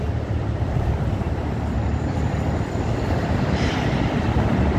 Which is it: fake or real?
fake